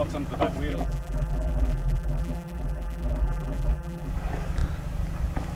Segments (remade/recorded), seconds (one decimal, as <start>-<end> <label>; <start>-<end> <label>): 0.0-0.7 recorded; 0.7-4.1 remade; 4.1-5.6 recorded